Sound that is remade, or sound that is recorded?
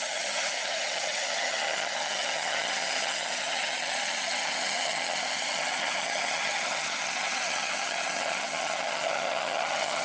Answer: remade